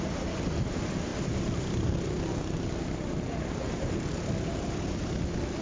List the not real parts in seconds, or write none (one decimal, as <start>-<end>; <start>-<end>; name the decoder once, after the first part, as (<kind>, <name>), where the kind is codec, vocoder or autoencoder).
0.0-1.1 (vocoder, BigVGAN v2); 3.5-5.6